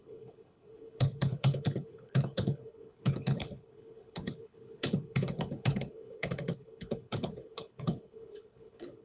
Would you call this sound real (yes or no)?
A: no